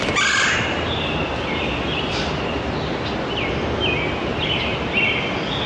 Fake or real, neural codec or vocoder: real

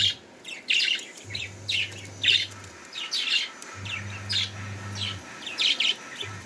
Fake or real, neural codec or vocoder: real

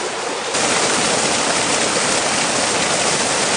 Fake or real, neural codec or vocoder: real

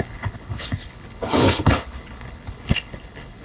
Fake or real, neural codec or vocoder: fake, codec, HILCodec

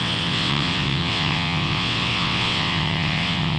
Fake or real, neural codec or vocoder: fake, vocoder, WaveNeXt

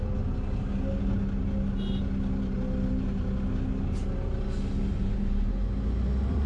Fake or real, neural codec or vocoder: real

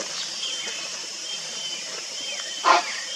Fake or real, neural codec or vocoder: fake, vocoder, BigVGAN v2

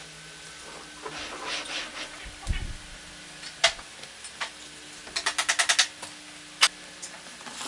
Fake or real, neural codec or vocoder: real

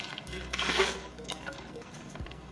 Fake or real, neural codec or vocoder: fake, codec, SNAC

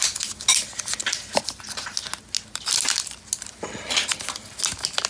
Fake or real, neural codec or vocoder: real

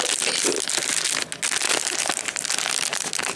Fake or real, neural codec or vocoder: real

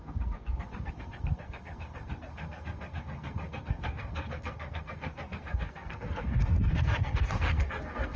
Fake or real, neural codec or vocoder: fake, codec, SNAC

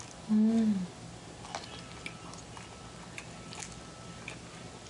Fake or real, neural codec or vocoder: real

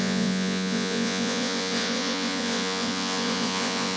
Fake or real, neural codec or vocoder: fake, vocoder, Vocos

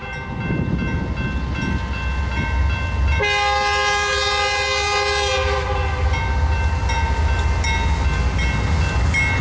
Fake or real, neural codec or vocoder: real